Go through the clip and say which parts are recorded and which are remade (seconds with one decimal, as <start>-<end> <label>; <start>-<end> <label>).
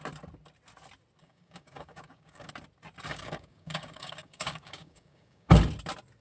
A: 0.0-1.2 recorded; 1.2-2.5 remade; 2.5-3.1 recorded; 3.1-5.5 remade; 5.5-6.2 recorded